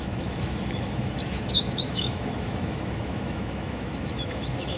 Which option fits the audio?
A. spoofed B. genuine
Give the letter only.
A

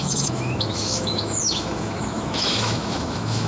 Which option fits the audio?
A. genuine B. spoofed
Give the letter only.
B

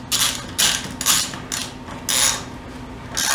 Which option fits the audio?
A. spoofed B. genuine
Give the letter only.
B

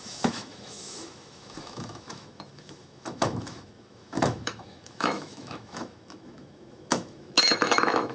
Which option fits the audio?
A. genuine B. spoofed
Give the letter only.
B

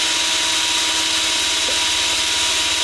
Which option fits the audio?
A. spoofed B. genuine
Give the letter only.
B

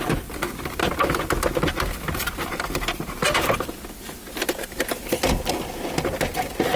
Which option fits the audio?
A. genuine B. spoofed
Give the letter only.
A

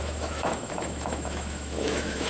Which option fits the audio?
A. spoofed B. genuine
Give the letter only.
A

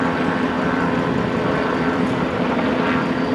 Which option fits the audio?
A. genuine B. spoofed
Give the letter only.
A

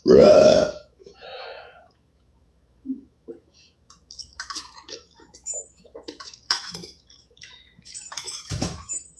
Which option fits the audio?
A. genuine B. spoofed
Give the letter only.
B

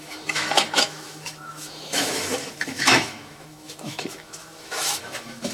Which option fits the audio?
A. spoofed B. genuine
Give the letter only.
A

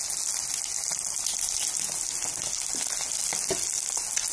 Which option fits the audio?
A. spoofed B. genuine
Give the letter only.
B